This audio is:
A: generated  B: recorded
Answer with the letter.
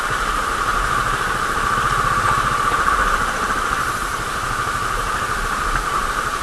A